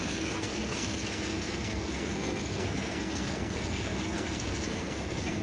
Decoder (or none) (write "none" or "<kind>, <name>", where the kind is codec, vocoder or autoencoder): codec, SNAC